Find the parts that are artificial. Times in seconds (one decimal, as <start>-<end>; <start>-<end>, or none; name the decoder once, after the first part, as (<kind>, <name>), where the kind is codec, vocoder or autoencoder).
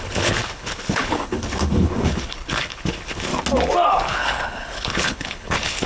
0.0-3.3 (codec, HILCodec); 3.9-5.9